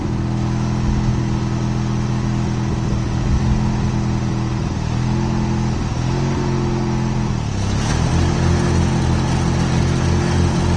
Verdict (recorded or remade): recorded